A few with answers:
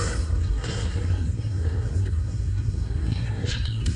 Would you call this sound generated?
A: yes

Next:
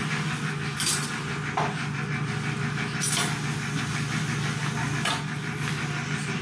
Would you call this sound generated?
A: no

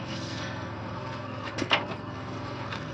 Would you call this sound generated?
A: yes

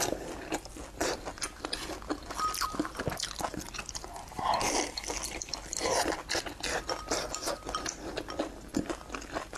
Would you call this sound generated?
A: no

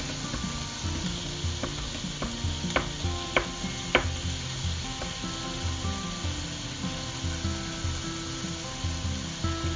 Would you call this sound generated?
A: no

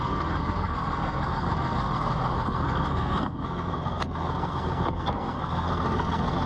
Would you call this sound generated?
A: yes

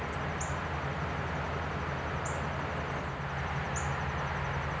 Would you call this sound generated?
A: no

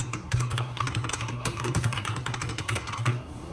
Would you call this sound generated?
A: yes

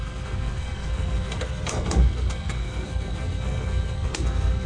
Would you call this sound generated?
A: yes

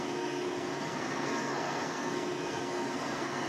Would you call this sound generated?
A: yes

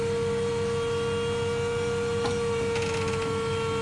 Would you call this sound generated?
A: no